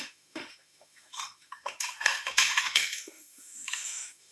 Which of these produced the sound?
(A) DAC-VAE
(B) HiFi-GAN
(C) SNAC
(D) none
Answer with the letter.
A